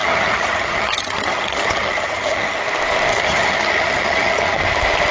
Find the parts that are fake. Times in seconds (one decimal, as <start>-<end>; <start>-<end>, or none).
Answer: 0.0-2.6; 3.1-4.6